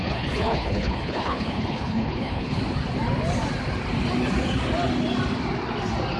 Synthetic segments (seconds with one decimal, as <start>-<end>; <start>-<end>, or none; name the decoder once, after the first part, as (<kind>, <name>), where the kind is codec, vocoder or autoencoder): 0.0-2.6 (codec, HILCodec)